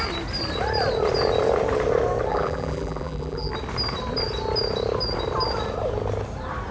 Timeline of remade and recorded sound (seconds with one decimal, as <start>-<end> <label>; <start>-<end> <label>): 0.0-2.3 recorded; 2.3-3.5 remade; 3.5-6.7 recorded